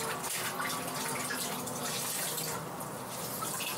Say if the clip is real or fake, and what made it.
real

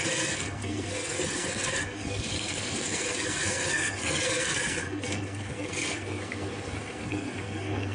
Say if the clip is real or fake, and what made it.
fake, codec, SNAC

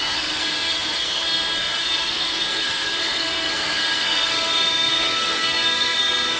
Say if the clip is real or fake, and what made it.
fake, codec, SNAC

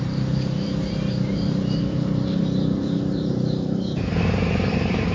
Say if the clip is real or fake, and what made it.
fake, vocoder, BigVGAN v2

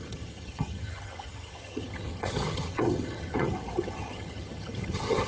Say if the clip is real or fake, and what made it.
fake, vocoder, HiFi-GAN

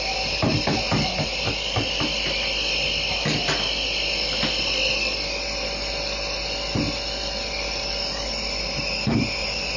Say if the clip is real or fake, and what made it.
real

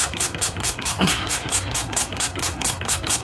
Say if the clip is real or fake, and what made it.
fake, codec, SNAC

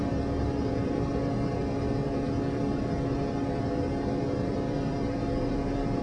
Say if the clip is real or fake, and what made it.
fake, vocoder, BigVGAN v2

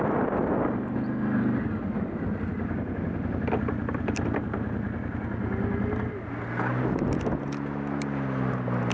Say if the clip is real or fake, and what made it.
real